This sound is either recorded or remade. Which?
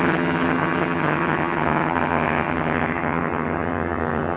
remade